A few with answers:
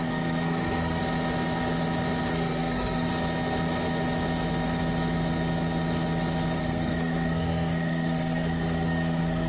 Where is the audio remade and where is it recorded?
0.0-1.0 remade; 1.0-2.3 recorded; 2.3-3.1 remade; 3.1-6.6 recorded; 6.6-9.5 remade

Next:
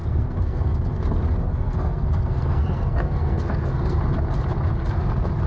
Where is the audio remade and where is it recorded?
0.0-1.0 remade; 1.0-1.5 recorded; 1.5-4.0 remade; 4.0-5.5 recorded

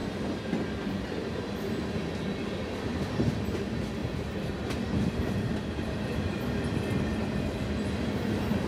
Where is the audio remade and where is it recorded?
0.0-4.0 recorded; 4.0-6.0 remade; 6.0-8.7 recorded

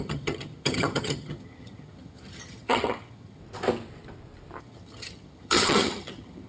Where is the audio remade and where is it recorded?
0.0-3.4 remade; 3.4-4.6 recorded; 4.6-6.5 remade

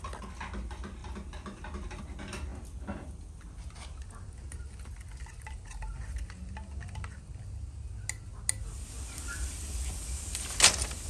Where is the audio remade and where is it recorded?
0.0-11.1 recorded

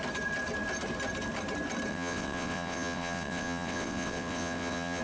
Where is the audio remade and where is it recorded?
0.0-1.9 recorded; 1.9-5.0 remade

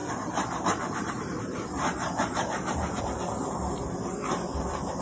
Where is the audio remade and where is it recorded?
0.0-3.0 remade; 3.0-5.0 recorded

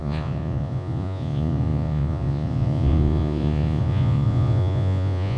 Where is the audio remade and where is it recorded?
0.0-5.4 remade